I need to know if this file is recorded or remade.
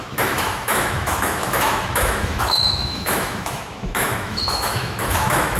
remade